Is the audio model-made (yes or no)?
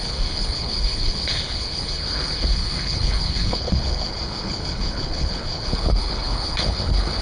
yes